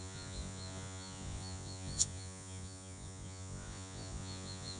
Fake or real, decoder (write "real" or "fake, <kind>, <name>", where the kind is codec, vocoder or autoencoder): fake, vocoder, Vocos